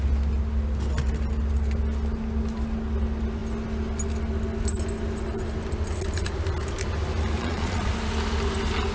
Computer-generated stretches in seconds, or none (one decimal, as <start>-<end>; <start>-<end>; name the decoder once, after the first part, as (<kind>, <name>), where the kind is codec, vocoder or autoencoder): 7.4-7.9 (vocoder, Vocos)